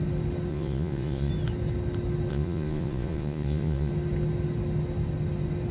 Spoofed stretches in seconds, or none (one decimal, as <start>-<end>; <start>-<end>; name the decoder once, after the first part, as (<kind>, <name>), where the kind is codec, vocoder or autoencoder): 0.5-1.3 (vocoder, Vocos); 2.3-3.9